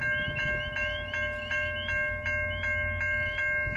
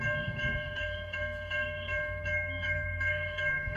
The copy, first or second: second